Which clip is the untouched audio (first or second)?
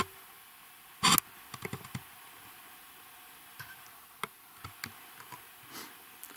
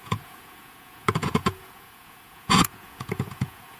first